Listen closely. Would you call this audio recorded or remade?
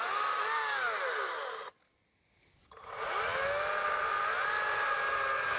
recorded